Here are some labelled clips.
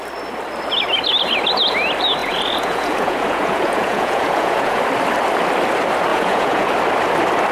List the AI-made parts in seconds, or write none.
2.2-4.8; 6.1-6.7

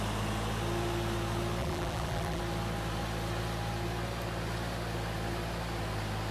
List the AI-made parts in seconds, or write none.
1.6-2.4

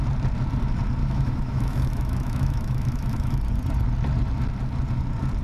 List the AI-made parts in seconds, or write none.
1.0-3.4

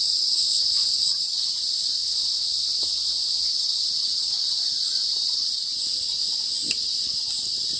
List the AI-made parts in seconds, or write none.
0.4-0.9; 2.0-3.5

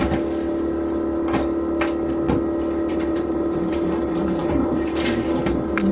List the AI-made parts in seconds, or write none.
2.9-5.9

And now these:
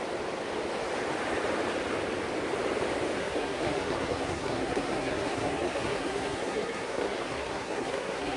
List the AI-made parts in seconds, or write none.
3.2-8.4